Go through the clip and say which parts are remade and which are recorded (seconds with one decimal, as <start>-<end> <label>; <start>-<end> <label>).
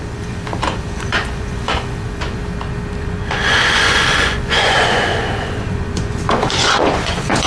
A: 0.0-2.4 remade; 2.4-3.0 recorded; 3.0-7.5 remade